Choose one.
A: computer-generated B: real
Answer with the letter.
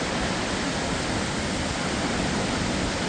B